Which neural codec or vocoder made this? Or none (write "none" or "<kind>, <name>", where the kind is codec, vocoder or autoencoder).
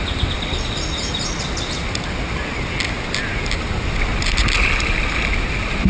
none